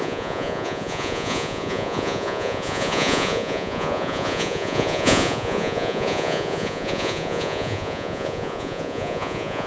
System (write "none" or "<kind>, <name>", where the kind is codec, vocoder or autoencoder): vocoder, Vocos